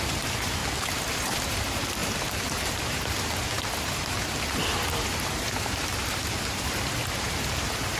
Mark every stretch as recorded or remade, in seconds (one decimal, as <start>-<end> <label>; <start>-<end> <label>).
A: 0.0-0.6 remade; 0.6-1.1 recorded; 1.1-8.0 remade

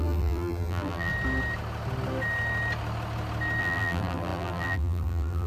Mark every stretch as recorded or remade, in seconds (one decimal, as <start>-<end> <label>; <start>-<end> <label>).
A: 0.0-1.1 remade; 1.1-3.6 recorded; 3.6-5.5 remade